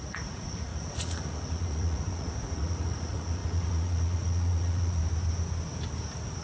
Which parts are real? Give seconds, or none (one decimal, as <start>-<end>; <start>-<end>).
5.0-6.4